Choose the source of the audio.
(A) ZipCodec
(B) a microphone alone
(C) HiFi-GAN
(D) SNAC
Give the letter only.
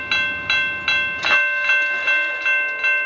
B